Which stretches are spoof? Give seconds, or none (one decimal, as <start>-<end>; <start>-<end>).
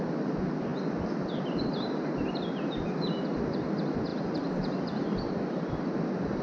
none